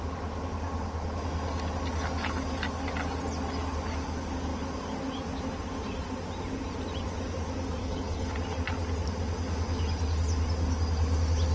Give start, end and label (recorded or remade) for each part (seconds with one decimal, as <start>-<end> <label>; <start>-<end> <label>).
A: 0.0-7.8 recorded; 7.8-8.3 remade; 8.3-11.5 recorded